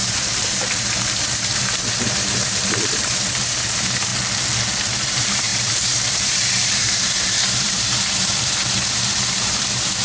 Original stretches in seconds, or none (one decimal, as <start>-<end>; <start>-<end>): 4.1-4.8